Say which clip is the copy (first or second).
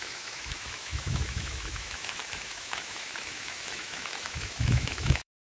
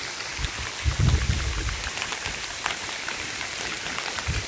first